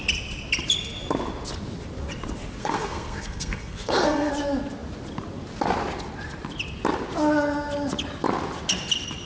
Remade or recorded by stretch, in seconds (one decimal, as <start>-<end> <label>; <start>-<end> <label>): 0.0-2.6 recorded; 2.6-4.3 remade; 4.3-9.2 recorded